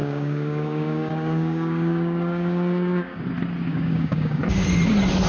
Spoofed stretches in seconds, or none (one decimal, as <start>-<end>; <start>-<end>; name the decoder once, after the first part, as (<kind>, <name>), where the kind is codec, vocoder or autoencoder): 0.0-3.2 (codec, DAC); 3.7-4.4